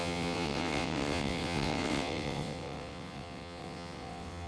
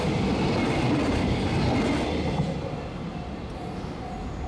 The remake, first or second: first